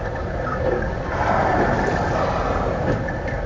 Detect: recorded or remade recorded